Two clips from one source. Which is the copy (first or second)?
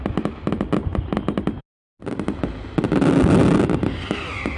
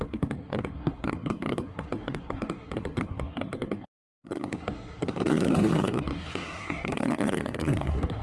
second